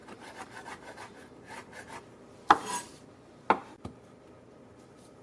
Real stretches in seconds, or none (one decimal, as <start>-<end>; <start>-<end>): 3.1-5.2